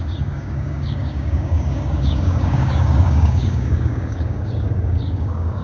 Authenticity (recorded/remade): remade